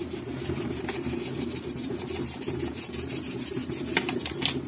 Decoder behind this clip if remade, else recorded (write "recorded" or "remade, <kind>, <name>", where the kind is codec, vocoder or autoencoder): remade, vocoder, BigVGAN v2